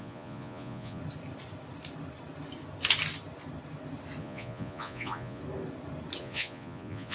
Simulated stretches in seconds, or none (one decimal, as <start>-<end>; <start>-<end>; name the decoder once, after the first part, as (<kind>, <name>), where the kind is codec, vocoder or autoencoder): 0.0-1.0 (vocoder, Vocos); 4.2-5.4; 6.2-7.1